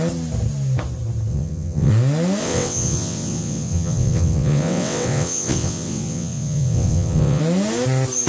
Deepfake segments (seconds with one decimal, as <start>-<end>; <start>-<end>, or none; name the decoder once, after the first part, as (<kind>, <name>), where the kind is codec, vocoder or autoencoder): 1.3-1.9 (vocoder, WaveNeXt); 2.4-7.4